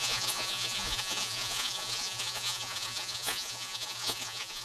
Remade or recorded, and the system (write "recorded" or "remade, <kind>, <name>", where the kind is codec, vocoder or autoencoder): remade, vocoder, Vocos